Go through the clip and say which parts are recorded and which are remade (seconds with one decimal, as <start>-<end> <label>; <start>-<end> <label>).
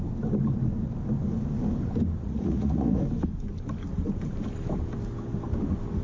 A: 0.0-2.2 recorded; 2.2-3.0 remade; 3.0-6.0 recorded